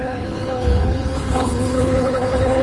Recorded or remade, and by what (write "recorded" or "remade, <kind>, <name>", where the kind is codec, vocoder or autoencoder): remade, codec, HILCodec